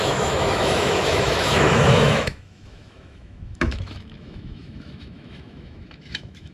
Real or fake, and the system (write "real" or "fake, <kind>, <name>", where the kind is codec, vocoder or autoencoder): fake, autoencoder, DAC-VAE